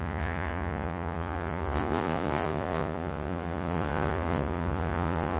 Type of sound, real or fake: fake